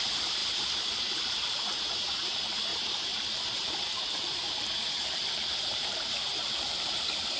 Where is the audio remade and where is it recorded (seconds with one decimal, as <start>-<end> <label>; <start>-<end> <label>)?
0.0-0.4 remade; 0.4-1.2 recorded; 1.2-7.4 remade